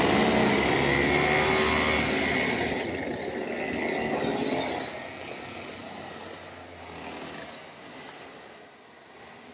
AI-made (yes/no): no